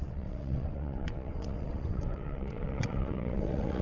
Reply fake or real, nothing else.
fake